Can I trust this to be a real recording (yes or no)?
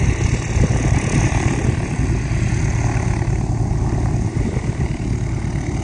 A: yes